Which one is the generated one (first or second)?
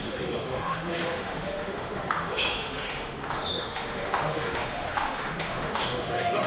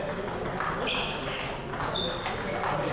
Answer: first